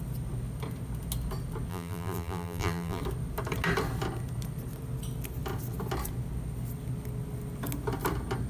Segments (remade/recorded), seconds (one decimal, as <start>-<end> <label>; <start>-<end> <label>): 0.0-1.7 recorded; 1.7-3.0 remade; 3.0-8.5 recorded